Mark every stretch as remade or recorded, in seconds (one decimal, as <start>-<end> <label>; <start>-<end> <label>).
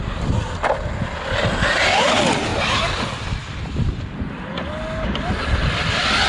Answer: 0.0-6.3 recorded